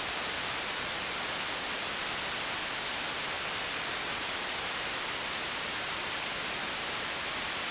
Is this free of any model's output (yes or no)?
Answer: yes